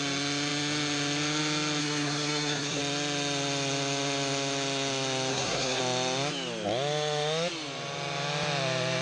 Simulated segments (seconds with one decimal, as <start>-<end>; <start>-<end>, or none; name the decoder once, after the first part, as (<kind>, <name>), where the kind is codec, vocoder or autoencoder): 1.8-2.8 (codec, SNAC); 5.3-5.8